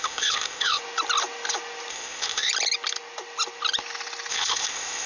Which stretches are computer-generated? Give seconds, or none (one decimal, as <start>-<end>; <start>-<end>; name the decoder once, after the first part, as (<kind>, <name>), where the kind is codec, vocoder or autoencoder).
0.0-0.8 (codec, ZipCodec); 1.9-2.5; 4.3-5.1